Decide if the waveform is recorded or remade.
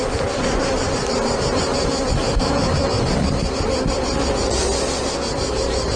recorded